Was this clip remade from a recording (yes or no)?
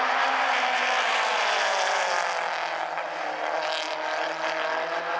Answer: no